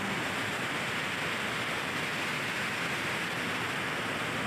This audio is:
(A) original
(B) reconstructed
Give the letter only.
A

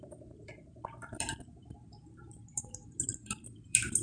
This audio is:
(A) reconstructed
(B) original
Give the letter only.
A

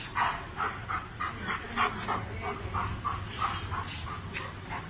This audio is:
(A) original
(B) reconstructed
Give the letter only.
A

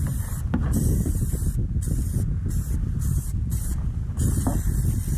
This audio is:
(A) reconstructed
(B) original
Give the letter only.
B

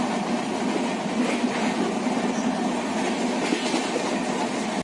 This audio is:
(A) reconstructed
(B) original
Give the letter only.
B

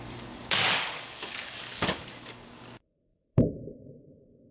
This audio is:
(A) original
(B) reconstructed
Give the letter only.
B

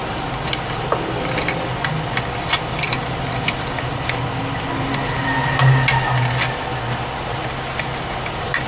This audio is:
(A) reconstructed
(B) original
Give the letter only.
B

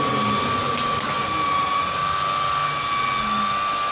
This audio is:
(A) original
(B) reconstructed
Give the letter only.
A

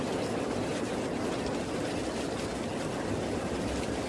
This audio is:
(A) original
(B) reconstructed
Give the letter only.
A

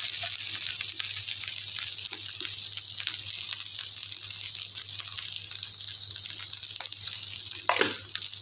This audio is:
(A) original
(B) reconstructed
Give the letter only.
A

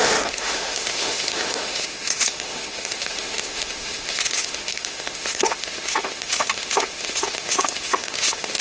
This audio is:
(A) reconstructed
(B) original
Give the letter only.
A